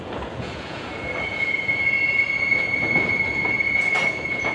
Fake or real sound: fake